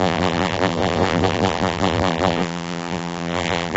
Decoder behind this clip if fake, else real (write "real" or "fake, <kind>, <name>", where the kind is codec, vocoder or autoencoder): fake, vocoder, BigVGAN v2